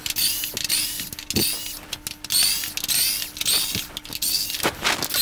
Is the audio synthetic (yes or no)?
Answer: no